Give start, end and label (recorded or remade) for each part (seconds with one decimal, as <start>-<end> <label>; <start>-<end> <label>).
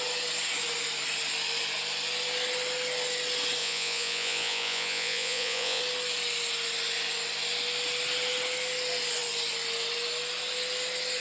0.0-3.6 recorded; 3.6-5.8 remade; 5.8-11.2 recorded